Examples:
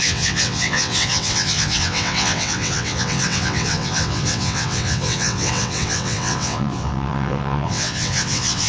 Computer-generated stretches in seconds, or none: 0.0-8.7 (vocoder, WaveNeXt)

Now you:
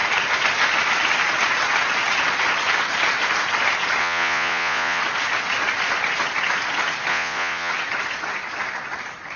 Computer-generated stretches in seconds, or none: 4.0-5.0 (vocoder, Vocos); 7.1-7.7